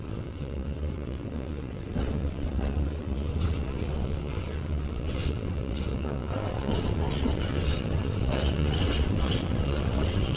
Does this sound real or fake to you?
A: fake